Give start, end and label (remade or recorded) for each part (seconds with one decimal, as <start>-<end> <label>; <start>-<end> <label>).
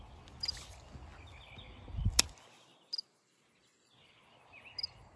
0.0-5.2 recorded